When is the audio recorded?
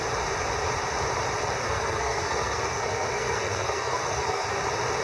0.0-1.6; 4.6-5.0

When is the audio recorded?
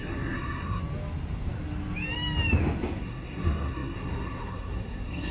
0.8-3.0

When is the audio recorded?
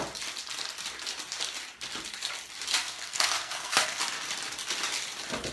0.0-2.8; 4.0-5.5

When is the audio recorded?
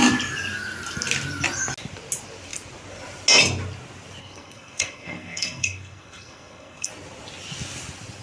0.0-4.2; 6.9-8.2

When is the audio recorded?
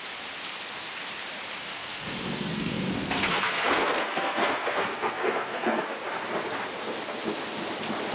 0.0-1.7; 5.8-8.1